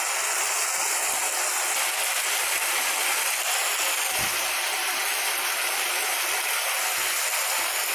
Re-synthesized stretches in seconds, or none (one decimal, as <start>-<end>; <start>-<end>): none